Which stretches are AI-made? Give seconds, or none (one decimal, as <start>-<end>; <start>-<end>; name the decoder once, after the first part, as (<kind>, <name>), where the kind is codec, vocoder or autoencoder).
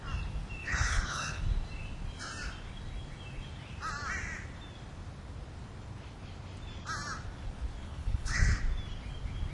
0.6-1.4 (codec, HILCodec); 7.8-8.6